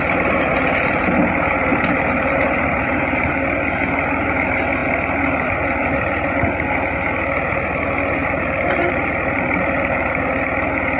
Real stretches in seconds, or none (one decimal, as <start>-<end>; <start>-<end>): 0.0-1.7; 3.3-8.2; 10.1-11.0